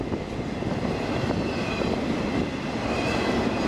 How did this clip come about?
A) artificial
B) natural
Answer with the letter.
B